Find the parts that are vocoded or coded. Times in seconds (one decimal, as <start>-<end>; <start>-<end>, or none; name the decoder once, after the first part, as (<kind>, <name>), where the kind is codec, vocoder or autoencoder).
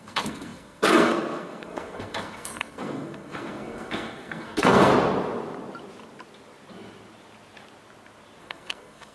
0.0-4.9 (codec, SNAC); 8.4-9.1